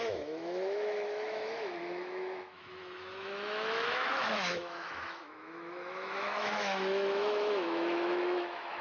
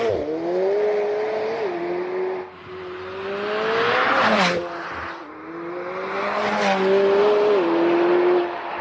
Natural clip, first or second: second